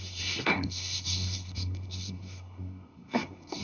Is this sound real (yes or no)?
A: no